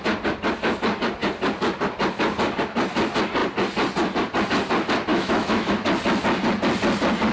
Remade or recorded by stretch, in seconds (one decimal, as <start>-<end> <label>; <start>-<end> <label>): 0.0-5.1 recorded; 5.1-5.7 remade; 5.7-7.3 recorded